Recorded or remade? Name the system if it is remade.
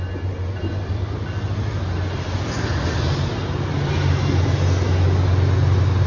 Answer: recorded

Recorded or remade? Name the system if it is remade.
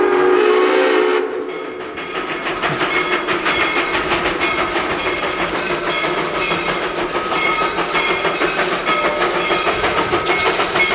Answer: recorded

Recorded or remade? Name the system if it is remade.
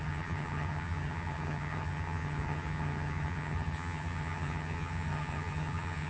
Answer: remade, vocoder, HiFi-GAN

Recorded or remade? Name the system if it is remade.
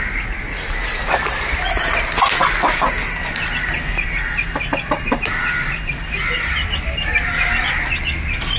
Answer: recorded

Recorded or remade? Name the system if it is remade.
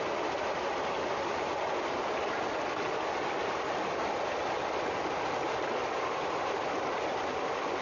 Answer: recorded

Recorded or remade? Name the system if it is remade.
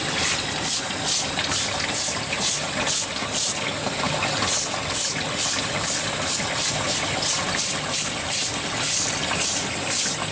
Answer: recorded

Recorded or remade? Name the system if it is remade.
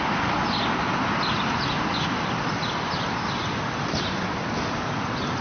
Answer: recorded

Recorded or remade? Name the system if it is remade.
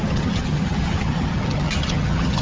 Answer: remade, vocoder, HiFi-GAN